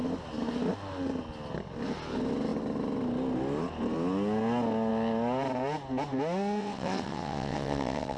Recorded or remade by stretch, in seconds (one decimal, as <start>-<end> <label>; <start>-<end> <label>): 0.0-6.6 recorded; 6.6-8.2 remade